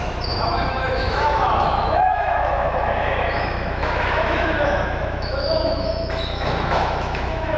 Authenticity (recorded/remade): remade